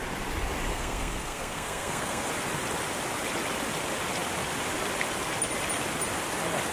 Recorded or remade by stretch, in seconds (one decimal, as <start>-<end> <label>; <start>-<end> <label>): 0.0-0.7 recorded; 0.7-2.3 remade; 2.3-6.7 recorded